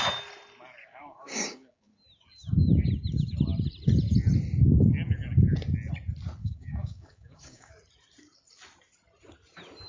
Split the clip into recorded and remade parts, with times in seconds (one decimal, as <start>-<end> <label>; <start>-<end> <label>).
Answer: 0.0-0.8 recorded; 0.8-1.9 remade; 1.9-6.4 recorded; 6.4-7.7 remade; 7.7-9.9 recorded